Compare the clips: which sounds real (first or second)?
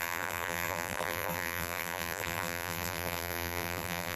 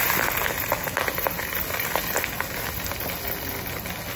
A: second